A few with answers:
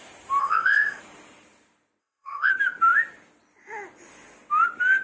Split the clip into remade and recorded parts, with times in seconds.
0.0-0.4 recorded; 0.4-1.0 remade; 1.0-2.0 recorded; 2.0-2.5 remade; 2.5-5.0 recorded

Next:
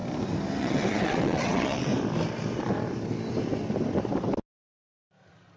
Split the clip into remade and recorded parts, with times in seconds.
0.0-0.6 recorded; 0.6-1.9 remade; 1.9-5.6 recorded

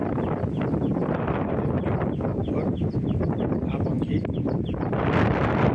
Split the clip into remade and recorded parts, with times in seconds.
0.0-0.6 recorded; 0.6-2.4 remade; 2.4-3.5 recorded; 3.5-5.7 remade

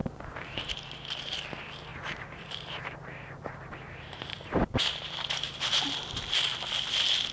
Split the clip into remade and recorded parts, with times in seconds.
0.0-0.7 remade; 0.7-1.9 recorded; 1.9-5.8 remade; 5.8-7.3 recorded

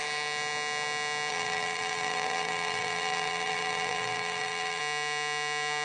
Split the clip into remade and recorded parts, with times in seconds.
0.0-1.3 recorded; 1.3-4.8 remade; 4.8-5.8 recorded

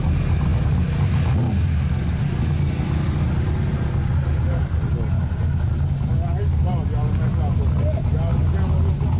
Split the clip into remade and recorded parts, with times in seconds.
0.0-9.2 recorded

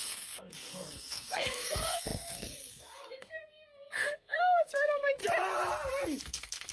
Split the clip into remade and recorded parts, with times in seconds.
0.0-5.2 remade; 5.2-6.2 recorded; 6.2-6.7 remade

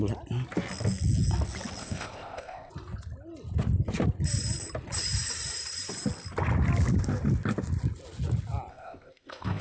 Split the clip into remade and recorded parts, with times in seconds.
0.0-1.8 recorded; 1.8-2.7 remade; 2.7-8.7 recorded; 8.7-9.6 remade